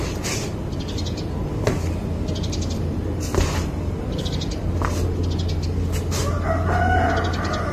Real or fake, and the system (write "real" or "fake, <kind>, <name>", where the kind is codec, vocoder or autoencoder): real